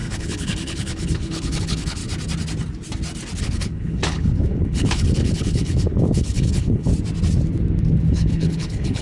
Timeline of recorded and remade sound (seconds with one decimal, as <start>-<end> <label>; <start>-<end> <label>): 0.0-2.0 remade; 2.0-3.4 recorded; 3.4-6.9 remade; 6.9-8.1 recorded; 8.1-9.0 remade